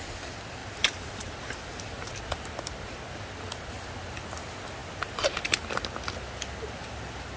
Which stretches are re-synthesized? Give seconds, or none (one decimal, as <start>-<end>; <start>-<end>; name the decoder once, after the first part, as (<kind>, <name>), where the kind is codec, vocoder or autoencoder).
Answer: 0.6-2.1 (vocoder, BigVGAN v2)